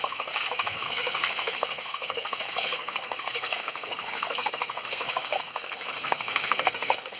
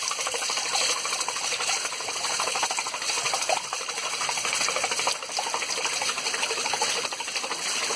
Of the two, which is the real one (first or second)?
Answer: second